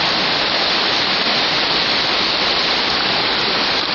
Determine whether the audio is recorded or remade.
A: recorded